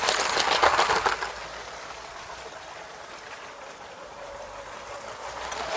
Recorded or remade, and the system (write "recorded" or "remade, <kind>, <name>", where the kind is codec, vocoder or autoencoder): recorded